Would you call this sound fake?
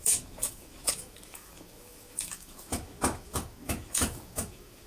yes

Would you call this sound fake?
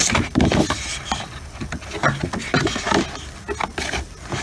no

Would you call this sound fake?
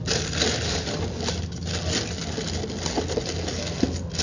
no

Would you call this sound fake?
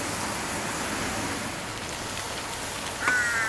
no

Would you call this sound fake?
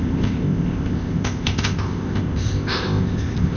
yes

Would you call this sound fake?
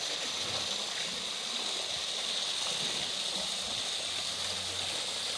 no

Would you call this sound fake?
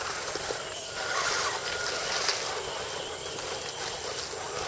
no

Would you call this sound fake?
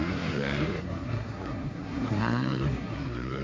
yes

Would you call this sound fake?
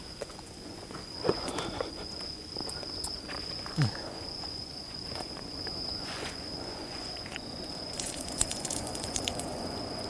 yes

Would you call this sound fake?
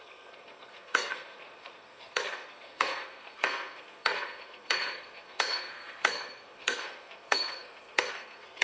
yes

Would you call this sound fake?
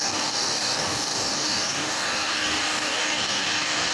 yes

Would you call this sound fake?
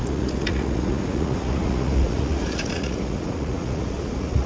yes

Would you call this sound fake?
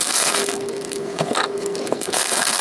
yes